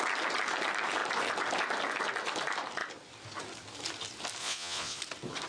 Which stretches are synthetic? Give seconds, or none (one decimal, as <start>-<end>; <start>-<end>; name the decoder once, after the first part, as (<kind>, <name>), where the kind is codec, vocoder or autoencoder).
4.4-5.0 (vocoder, Vocos)